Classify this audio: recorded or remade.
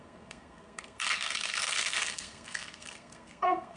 remade